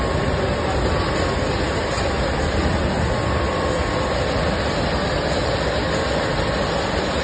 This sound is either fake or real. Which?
real